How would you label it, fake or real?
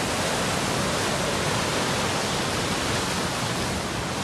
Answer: real